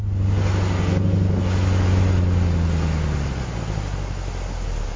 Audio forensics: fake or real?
real